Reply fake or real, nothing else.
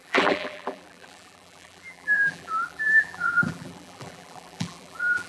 fake